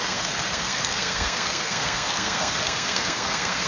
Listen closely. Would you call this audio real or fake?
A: fake